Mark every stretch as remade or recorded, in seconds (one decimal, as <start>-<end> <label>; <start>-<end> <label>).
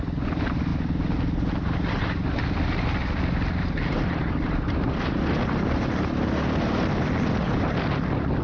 0.0-8.4 recorded